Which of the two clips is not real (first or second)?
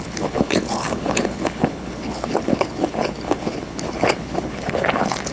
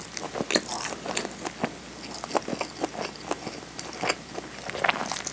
first